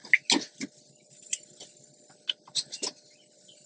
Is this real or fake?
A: real